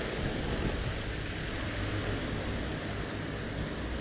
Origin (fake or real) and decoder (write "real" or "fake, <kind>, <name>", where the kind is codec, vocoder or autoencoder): real